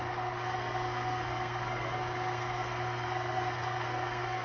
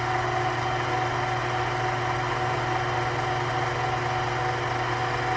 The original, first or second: second